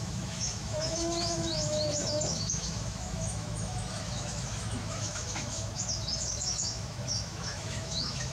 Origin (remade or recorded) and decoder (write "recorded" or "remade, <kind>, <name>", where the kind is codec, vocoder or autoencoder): remade, autoencoder, DAC-VAE